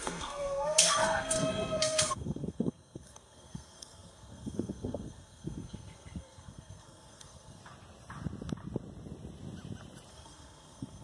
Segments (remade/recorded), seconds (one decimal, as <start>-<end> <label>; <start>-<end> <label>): 0.0-7.6 remade; 7.6-10.1 recorded; 10.1-11.0 remade